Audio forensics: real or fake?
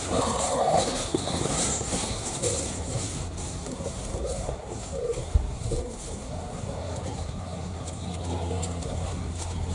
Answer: fake